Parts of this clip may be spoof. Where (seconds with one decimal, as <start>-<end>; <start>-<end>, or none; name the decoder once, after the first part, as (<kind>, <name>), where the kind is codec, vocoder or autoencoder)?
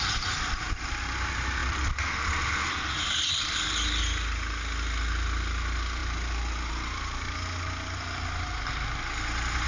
none